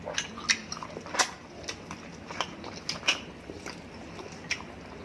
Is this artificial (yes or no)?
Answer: no